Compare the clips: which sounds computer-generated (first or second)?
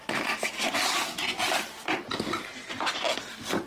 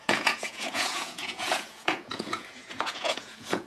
second